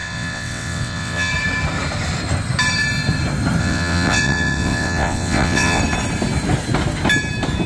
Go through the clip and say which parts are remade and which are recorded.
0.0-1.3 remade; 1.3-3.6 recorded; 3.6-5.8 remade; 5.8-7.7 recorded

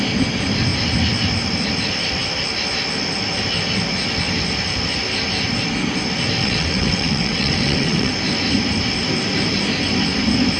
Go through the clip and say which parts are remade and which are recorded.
0.0-6.4 recorded; 6.4-8.1 remade; 8.1-10.6 recorded